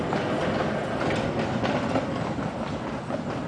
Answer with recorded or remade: recorded